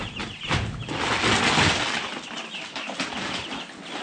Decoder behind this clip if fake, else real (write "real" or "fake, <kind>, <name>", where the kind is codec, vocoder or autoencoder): real